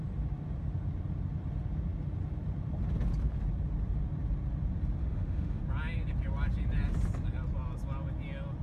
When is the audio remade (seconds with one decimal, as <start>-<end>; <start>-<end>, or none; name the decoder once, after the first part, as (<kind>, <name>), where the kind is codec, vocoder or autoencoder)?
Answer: 5.0-5.6 (autoencoder, DAC-VAE)

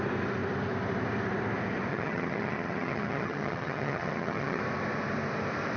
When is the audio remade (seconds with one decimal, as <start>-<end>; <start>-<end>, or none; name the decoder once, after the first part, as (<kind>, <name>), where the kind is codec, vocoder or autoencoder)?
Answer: 1.9-4.6 (vocoder, HiFi-GAN)